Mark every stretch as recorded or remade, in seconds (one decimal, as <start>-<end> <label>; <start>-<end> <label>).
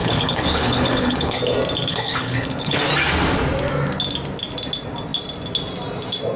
0.0-1.4 remade; 1.4-1.9 recorded; 1.9-2.8 remade; 2.8-6.4 recorded